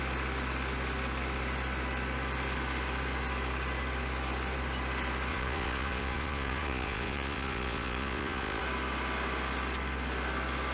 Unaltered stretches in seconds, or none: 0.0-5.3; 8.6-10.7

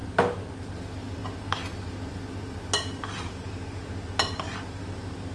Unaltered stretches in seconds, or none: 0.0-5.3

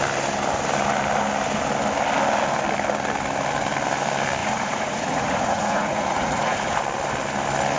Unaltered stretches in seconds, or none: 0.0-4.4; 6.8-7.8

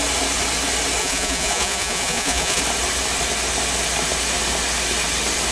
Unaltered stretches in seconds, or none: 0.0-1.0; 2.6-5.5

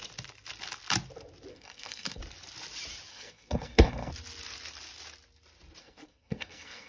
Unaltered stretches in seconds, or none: 0.0-1.5; 2.2-3.1; 4.1-5.8

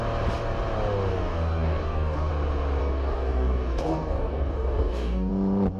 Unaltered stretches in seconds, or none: 0.0-1.1; 2.3-2.8; 5.3-5.8

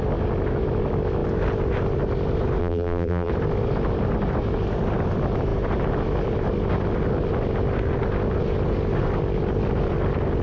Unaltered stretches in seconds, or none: 0.0-2.6; 3.3-10.4